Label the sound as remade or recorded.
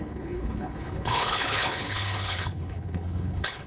remade